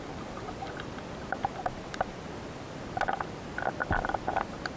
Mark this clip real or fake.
real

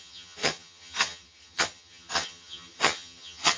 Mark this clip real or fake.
fake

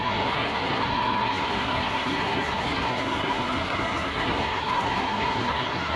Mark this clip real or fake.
fake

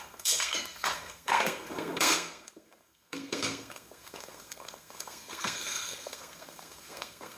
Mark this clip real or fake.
fake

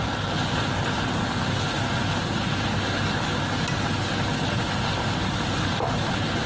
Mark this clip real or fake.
real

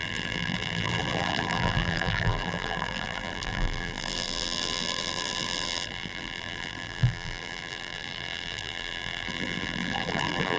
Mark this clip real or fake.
fake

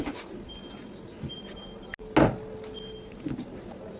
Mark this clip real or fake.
real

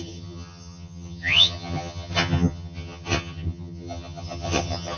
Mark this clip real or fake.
fake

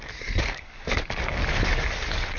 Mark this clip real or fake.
fake